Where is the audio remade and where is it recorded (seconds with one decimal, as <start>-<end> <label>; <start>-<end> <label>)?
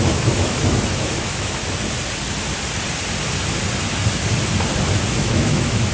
0.0-1.6 remade; 1.6-5.1 recorded; 5.1-5.9 remade